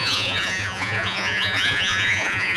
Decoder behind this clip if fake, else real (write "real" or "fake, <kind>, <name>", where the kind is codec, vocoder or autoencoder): fake, vocoder, Vocos